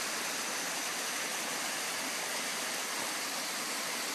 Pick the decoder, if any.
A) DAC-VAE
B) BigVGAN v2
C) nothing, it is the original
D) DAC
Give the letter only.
C